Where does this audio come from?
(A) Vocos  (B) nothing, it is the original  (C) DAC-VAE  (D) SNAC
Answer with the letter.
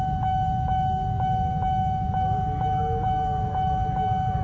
C